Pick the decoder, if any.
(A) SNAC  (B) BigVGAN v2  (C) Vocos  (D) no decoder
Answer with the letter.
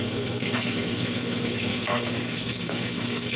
A